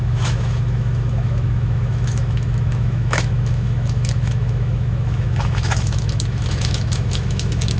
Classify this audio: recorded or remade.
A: remade